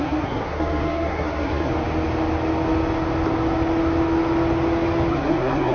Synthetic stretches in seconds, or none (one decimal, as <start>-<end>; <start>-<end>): 0.0-1.7; 5.1-5.7